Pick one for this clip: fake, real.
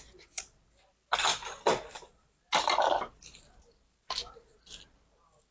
real